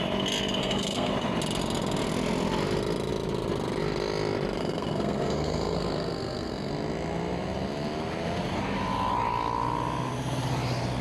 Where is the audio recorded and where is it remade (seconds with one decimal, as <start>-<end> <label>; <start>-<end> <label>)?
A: 0.0-0.6 recorded; 0.6-1.1 remade; 1.1-4.6 recorded; 4.6-6.7 remade; 6.7-11.0 recorded